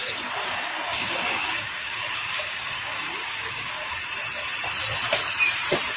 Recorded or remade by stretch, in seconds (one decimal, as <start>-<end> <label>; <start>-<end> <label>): 0.0-0.4 recorded; 0.4-3.9 remade; 3.9-6.0 recorded